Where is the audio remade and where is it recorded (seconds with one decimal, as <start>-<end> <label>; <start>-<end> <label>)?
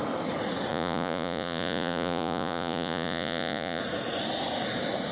0.0-0.7 recorded; 0.7-3.8 remade; 3.8-5.1 recorded